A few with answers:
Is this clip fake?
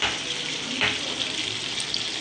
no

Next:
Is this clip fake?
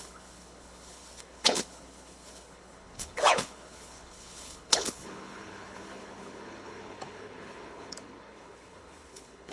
yes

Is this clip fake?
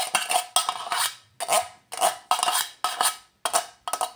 no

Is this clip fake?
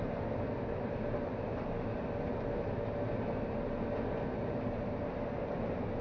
no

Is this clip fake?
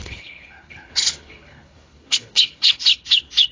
yes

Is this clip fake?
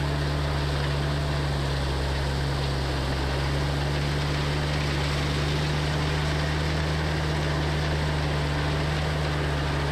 no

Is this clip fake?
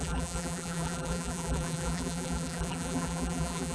yes